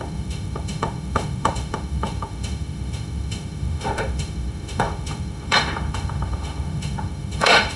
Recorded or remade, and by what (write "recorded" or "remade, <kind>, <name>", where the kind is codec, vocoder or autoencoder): remade, autoencoder, DAC-VAE